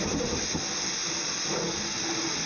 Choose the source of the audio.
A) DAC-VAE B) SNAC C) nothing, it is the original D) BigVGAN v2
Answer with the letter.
D